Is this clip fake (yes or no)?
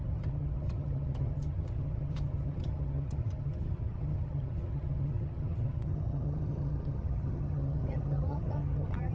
yes